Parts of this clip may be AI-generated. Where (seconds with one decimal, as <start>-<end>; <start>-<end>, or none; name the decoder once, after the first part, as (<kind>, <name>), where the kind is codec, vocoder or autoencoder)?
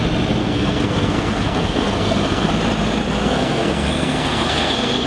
0.4-2.5 (codec, SNAC); 3.2-5.1